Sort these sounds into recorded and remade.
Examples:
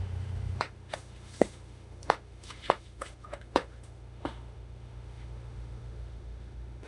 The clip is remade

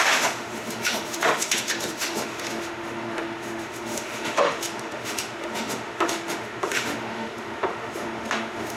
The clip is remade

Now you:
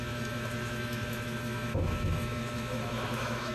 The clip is remade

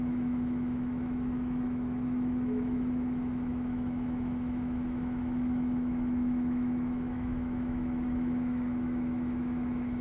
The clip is remade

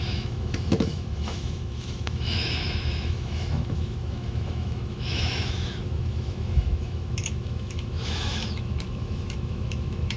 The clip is remade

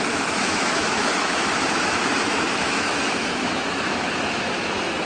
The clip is remade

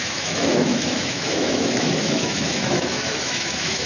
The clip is remade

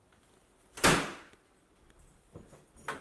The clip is recorded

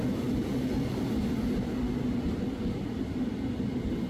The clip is recorded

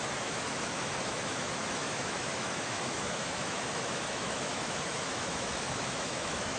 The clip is remade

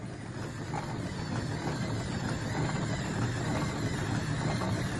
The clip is recorded